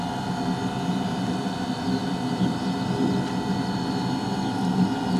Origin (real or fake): real